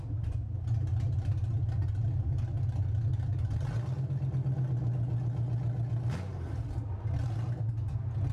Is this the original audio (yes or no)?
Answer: yes